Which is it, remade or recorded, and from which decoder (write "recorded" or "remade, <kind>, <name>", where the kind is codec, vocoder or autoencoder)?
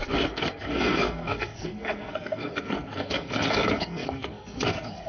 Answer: remade, codec, SNAC